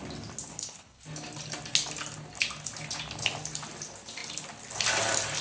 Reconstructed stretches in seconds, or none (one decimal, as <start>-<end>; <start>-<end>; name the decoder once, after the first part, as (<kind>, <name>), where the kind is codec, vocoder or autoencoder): 0.5-1.0 (codec, HILCodec)